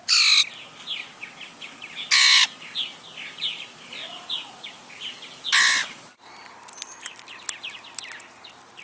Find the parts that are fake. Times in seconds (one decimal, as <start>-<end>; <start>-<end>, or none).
4.0-5.0